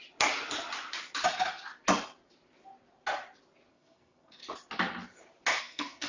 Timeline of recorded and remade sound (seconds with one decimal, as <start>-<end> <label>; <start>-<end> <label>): 0.0-3.7 recorded; 3.7-4.4 remade; 4.4-5.6 recorded; 5.6-6.1 remade